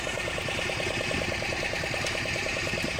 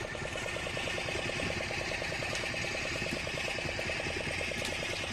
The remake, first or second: first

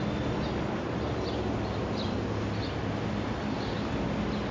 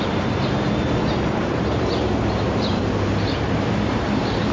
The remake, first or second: second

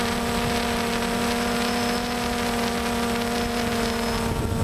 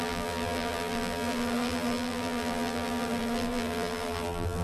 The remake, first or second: second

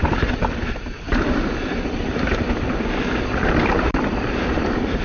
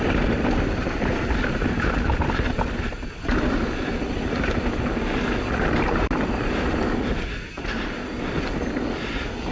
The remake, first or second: first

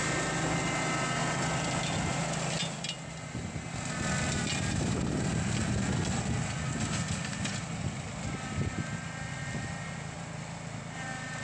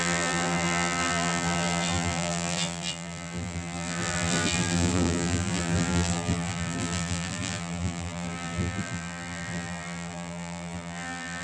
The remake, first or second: second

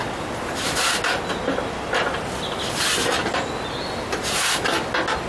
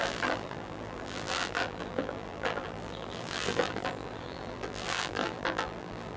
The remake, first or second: second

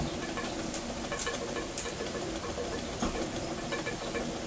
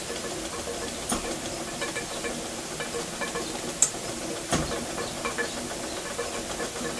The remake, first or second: first